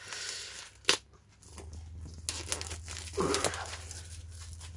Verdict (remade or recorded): recorded